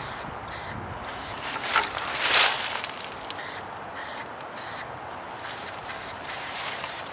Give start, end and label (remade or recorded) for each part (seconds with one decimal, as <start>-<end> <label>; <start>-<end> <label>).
0.0-0.4 remade; 0.4-3.8 recorded; 3.8-4.2 remade; 4.2-5.6 recorded; 5.6-7.1 remade